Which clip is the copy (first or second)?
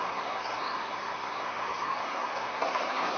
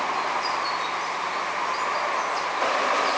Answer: first